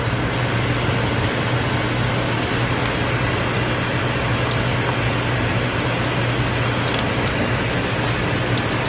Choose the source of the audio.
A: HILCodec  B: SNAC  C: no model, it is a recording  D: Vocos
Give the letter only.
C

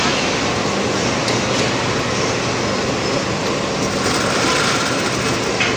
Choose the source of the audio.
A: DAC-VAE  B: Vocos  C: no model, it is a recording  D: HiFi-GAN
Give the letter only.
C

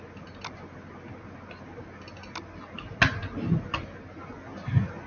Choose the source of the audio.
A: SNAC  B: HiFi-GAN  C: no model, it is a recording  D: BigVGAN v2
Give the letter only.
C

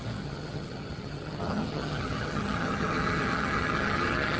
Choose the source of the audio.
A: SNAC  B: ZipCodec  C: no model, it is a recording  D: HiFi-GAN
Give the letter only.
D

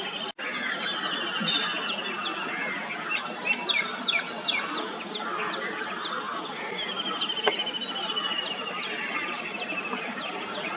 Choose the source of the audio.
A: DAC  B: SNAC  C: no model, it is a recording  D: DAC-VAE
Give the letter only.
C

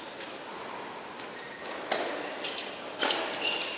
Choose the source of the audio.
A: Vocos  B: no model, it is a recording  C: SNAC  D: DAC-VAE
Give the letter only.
B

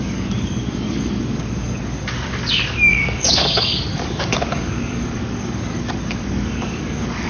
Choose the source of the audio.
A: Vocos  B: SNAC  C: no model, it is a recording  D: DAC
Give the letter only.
D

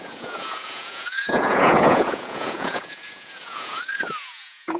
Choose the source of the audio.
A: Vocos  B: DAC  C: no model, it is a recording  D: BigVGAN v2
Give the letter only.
A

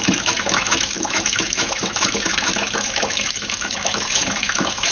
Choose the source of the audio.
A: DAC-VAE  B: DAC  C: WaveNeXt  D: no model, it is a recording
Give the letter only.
A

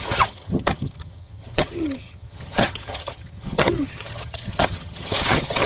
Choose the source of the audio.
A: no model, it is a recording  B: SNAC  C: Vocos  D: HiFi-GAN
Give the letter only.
D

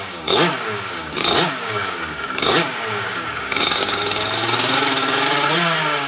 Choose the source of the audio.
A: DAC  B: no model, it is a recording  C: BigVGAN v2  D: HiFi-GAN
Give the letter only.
A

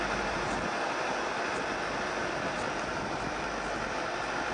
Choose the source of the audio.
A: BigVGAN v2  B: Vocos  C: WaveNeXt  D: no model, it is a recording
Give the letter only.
D